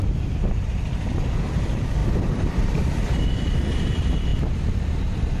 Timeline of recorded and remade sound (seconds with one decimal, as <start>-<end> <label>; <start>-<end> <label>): 0.0-4.3 remade; 4.3-5.4 recorded